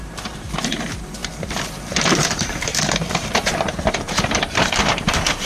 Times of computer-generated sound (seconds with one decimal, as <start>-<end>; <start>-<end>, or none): 0.0-5.5